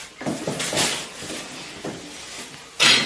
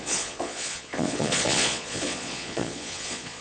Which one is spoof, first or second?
second